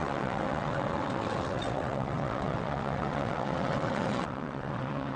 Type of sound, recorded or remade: remade